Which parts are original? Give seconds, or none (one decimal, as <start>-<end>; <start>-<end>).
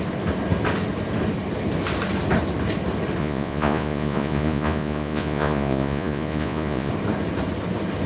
0.0-3.2; 6.9-8.1